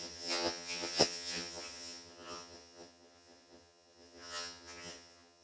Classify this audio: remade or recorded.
remade